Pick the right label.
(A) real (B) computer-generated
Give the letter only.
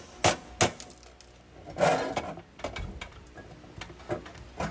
A